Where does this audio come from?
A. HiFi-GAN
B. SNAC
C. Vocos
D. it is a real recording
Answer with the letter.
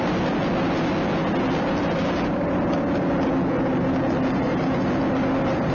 D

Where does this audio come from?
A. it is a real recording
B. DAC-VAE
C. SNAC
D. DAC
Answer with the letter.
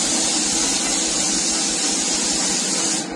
A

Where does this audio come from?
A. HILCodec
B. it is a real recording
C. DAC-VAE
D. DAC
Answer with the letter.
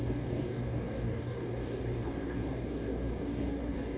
D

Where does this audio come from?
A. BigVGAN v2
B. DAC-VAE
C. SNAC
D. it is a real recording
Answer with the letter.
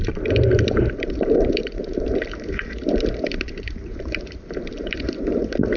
A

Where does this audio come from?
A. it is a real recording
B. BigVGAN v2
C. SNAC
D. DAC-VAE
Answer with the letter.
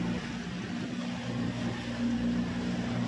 A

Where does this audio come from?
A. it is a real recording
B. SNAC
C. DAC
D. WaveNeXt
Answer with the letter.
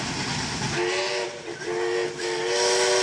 A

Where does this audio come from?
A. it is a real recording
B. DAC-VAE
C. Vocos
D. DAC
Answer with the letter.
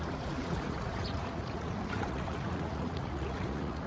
C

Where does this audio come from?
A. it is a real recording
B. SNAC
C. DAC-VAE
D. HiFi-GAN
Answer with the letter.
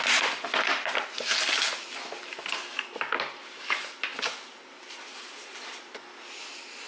A